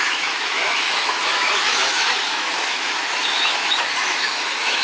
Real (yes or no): no